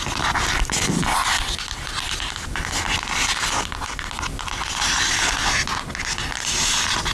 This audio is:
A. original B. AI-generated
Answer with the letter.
A